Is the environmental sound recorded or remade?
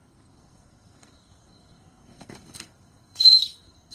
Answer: remade